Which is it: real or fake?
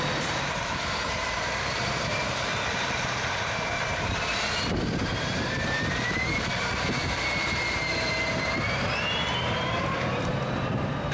fake